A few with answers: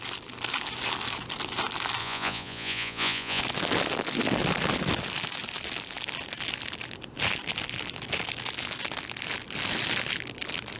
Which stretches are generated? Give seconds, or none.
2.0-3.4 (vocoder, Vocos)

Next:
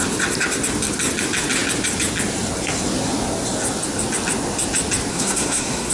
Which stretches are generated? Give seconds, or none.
5.1-5.9 (codec, SNAC)

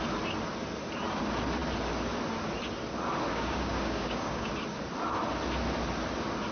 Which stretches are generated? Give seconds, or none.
3.3-4.5 (codec, DAC)

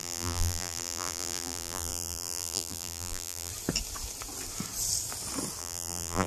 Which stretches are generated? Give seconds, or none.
0.0-3.5 (vocoder, BigVGAN v2); 5.6-6.3

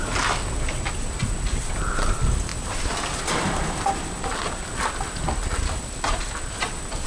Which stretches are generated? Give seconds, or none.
none